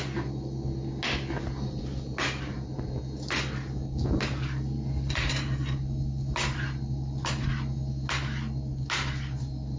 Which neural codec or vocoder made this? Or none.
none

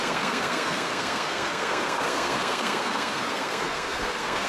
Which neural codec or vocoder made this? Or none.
codec, SNAC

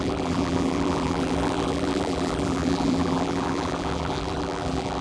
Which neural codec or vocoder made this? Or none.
vocoder, BigVGAN v2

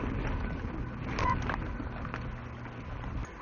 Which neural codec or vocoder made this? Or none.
none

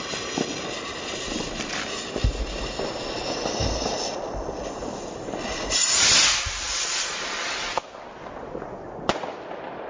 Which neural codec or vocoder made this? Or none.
none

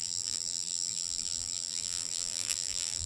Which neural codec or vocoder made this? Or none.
vocoder, BigVGAN v2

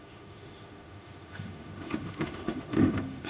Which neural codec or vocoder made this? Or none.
autoencoder, DAC-VAE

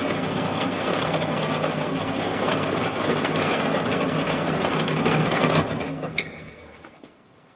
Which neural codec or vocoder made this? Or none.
codec, SNAC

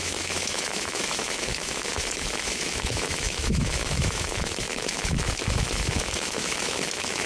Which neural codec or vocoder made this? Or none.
autoencoder, DAC-VAE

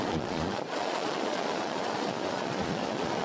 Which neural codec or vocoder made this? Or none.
vocoder, Vocos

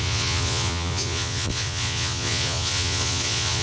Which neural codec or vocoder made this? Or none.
vocoder, Vocos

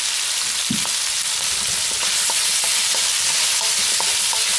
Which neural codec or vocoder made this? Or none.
none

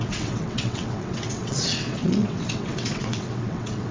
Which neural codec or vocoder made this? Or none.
vocoder, WaveNeXt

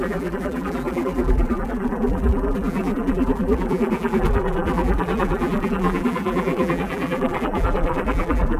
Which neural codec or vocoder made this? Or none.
vocoder, BigVGAN v2